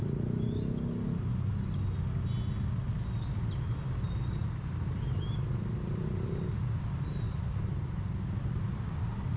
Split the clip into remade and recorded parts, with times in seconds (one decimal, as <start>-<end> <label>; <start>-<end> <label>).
0.0-9.4 recorded

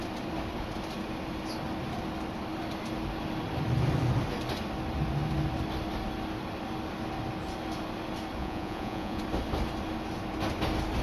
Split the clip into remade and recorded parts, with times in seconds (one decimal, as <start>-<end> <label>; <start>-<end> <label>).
0.0-8.4 recorded; 8.4-9.2 remade; 9.2-11.0 recorded

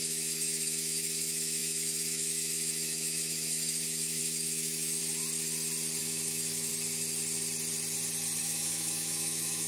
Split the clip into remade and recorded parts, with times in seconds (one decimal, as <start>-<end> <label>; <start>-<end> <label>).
0.0-5.0 remade; 5.0-6.0 recorded; 6.0-6.7 remade; 6.7-8.4 recorded; 8.4-9.7 remade

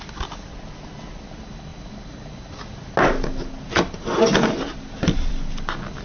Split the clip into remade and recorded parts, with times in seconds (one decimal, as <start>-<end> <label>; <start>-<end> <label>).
0.0-6.0 recorded

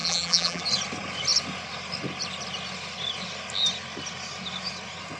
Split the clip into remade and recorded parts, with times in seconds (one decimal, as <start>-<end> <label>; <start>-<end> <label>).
0.0-0.6 remade; 0.6-5.2 recorded